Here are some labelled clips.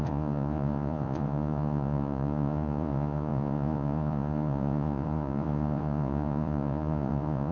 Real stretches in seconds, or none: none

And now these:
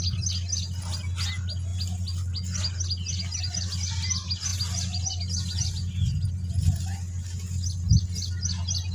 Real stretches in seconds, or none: 0.0-8.9

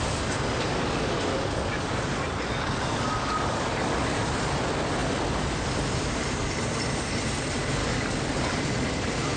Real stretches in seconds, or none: 0.0-0.7; 4.2-7.8; 8.6-9.4

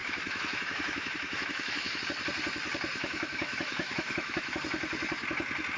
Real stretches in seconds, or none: 2.0-3.0; 4.6-5.8

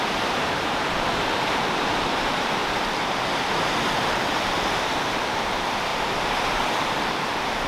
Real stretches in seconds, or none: 2.6-4.1; 5.9-6.8